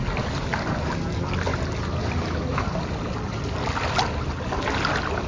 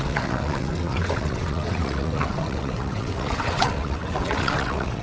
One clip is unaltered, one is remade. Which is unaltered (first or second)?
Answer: first